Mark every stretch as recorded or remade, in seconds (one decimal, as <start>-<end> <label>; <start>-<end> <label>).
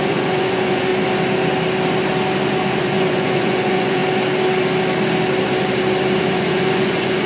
0.0-0.9 remade; 0.9-2.8 recorded; 2.8-4.0 remade; 4.0-6.2 recorded; 6.2-7.3 remade